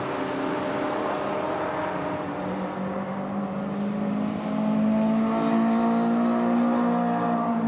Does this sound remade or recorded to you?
recorded